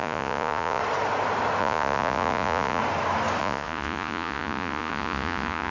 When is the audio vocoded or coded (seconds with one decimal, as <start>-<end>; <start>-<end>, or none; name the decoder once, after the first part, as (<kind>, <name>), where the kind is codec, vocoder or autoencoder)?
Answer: 0.0-0.8 (vocoder, Vocos); 1.6-2.8; 3.4-5.7